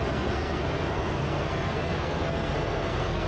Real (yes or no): no